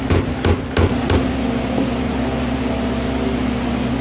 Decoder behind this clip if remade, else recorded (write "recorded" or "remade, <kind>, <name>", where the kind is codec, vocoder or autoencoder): recorded